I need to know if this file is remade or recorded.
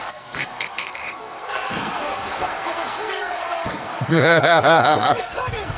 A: remade